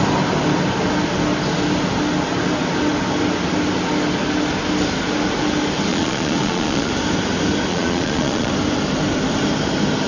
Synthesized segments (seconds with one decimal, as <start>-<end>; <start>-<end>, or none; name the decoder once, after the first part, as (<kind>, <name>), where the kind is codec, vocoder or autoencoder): 5.9-6.9 (vocoder, Vocos); 7.7-8.5

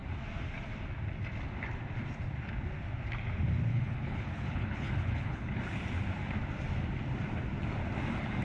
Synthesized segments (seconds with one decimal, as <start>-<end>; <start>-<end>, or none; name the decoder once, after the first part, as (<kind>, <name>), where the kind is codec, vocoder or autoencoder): 3.7-5.6 (codec, HILCodec)

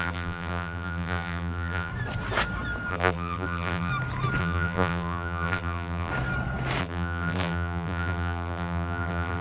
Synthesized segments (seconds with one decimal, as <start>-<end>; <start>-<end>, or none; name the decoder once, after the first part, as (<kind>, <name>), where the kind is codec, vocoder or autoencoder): 0.0-1.9 (vocoder, BigVGAN v2); 2.9-3.9; 4.4-6.1; 6.8-9.4

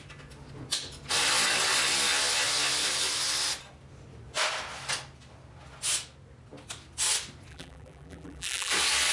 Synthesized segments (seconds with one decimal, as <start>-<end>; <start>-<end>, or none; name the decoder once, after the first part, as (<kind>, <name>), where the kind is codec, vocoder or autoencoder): 7.5-8.7 (vocoder, BigVGAN v2)

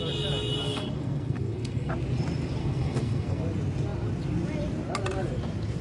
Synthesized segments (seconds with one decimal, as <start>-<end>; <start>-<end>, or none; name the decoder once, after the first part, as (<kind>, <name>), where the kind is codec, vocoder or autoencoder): 0.6-1.9 (codec, SNAC); 2.6-3.4

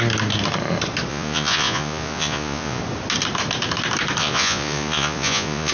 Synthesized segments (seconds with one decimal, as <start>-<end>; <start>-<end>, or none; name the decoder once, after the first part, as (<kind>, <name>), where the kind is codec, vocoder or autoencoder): 1.1-2.8 (vocoder, Vocos); 4.2-5.7